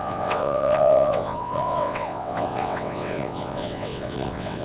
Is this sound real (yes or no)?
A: no